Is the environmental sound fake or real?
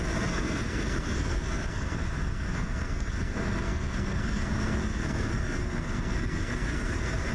fake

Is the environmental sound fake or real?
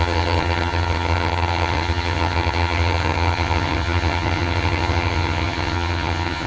fake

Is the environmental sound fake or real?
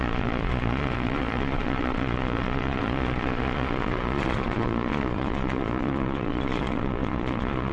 fake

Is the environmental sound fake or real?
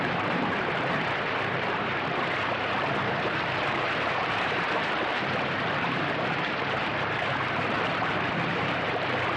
fake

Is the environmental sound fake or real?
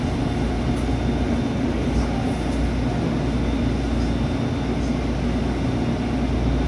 real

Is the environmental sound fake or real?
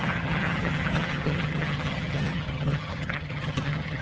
fake